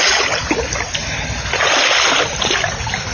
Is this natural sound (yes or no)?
yes